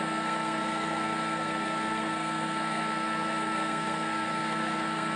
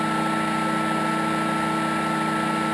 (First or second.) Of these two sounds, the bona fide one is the second